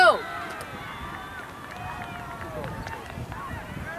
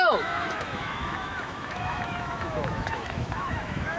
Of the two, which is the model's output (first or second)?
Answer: second